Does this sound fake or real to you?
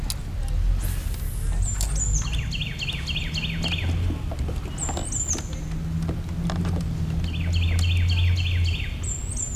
real